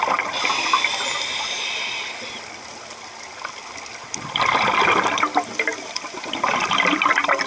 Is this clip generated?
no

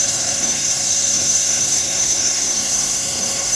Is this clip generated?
yes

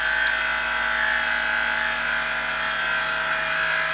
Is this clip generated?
no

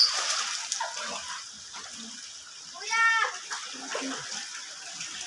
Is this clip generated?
no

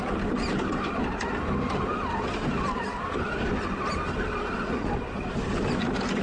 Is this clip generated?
no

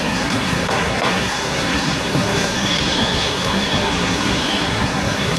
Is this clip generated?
yes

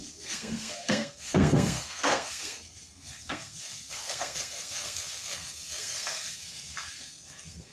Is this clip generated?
yes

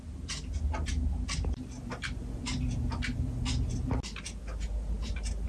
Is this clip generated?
no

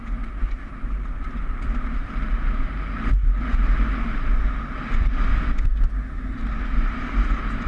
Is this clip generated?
no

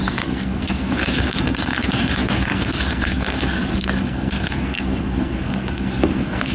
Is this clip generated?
yes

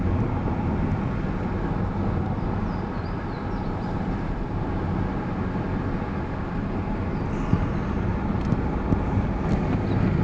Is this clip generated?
no